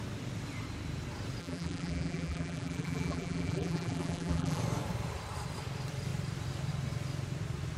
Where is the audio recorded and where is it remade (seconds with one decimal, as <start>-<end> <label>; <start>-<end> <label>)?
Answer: 0.0-1.4 recorded; 1.4-4.6 remade; 4.6-7.8 recorded